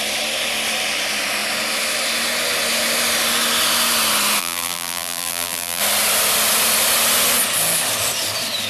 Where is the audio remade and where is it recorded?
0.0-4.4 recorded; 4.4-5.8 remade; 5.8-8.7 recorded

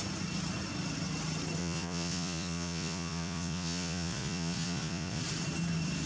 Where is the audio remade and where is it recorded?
0.0-1.6 recorded; 1.6-5.2 remade; 5.2-6.1 recorded

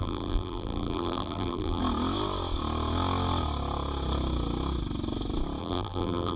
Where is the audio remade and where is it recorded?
0.0-1.8 remade; 1.8-5.6 recorded; 5.6-6.4 remade

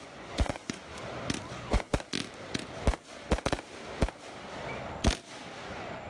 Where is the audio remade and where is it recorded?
0.0-1.0 remade; 1.0-1.5 recorded; 1.5-1.9 remade; 1.9-5.6 recorded; 5.6-6.1 remade

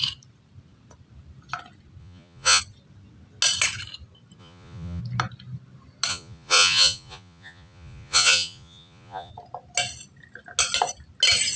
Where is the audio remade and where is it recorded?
0.0-2.0 recorded; 2.0-2.6 remade; 2.6-4.4 recorded; 4.4-5.0 remade; 5.0-6.1 recorded; 6.1-9.3 remade; 9.3-11.6 recorded

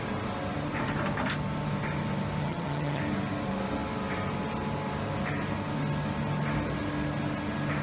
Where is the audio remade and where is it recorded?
0.0-2.4 recorded; 2.4-3.0 remade; 3.0-7.8 recorded

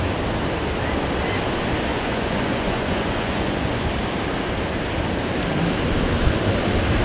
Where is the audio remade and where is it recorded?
0.0-1.9 recorded; 1.9-3.9 remade; 3.9-7.0 recorded